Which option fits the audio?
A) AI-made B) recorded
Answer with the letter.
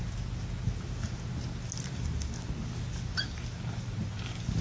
B